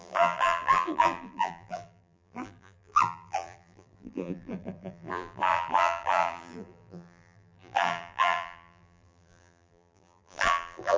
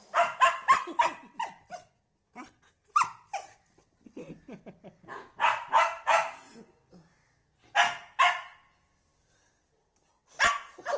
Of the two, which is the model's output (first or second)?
first